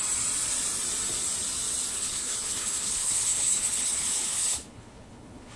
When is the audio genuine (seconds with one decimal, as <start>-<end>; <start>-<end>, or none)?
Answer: 0.0-1.9